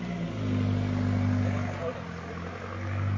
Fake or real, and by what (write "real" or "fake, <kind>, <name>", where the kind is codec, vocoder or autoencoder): real